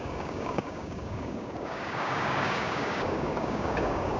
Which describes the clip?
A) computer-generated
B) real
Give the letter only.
A